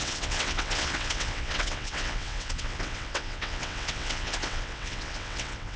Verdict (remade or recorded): remade